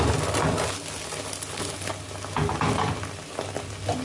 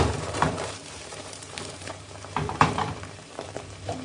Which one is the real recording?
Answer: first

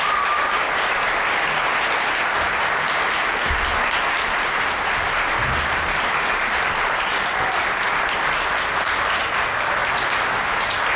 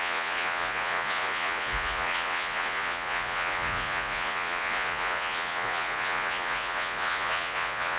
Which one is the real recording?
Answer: first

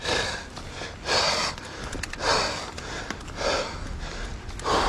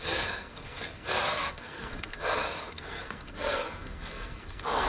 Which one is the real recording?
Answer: first